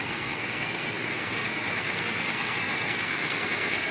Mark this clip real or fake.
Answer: fake